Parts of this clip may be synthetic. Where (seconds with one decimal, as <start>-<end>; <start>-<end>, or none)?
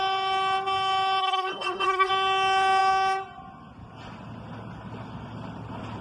1.2-2.1